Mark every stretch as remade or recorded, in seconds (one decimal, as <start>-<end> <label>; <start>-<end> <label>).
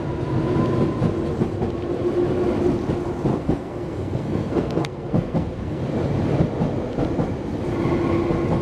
0.0-3.3 recorded; 3.3-5.8 remade; 5.8-8.6 recorded